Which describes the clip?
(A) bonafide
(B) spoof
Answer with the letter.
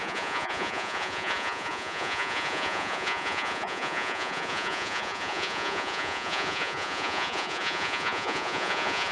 B